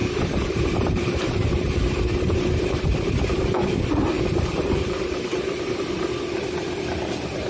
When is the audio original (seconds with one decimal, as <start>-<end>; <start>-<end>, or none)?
4.2-5.3; 5.8-7.5